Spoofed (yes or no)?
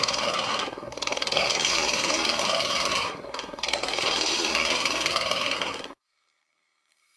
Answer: yes